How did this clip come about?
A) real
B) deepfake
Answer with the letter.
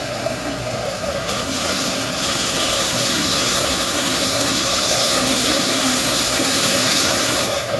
B